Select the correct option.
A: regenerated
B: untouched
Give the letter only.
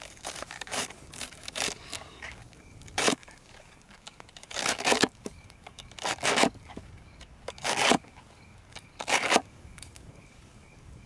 A